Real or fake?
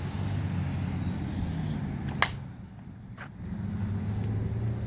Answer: real